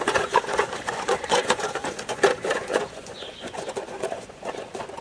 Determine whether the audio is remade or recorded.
remade